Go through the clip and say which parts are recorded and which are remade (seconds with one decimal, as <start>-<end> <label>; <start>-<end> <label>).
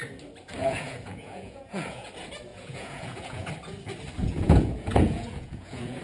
0.0-0.6 recorded; 0.6-2.1 remade; 2.1-2.5 recorded; 2.5-3.5 remade; 3.5-4.2 recorded; 4.2-6.0 remade